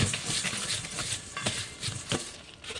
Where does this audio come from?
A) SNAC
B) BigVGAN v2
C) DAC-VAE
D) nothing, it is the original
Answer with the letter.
D